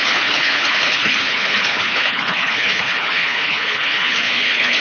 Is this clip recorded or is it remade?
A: remade